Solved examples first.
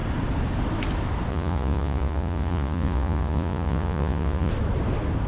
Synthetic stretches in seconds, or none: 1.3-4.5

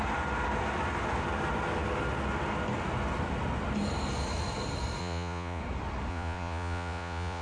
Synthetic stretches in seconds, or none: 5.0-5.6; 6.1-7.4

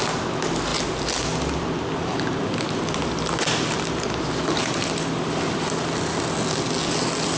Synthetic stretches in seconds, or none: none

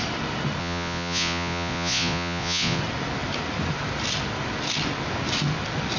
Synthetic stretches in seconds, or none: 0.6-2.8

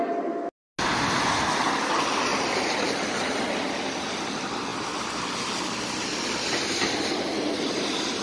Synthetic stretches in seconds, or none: none

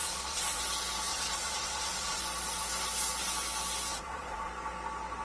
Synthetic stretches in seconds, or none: 0.0-0.6; 1.1-2.2; 3.9-4.5

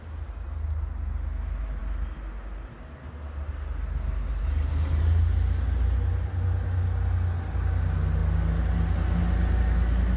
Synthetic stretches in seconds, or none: none